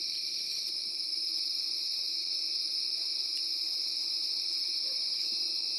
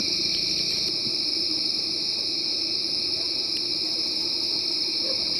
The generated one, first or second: second